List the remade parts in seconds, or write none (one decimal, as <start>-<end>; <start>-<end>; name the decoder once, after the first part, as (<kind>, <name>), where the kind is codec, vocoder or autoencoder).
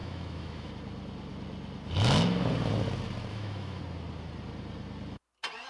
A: 0.0-0.7 (autoencoder, DAC-VAE); 3.3-3.8